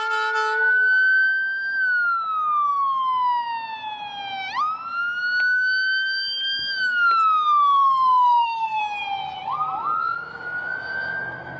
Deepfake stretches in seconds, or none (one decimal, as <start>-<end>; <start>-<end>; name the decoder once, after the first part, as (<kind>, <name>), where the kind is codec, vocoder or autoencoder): 7.8-8.8 (codec, SNAC)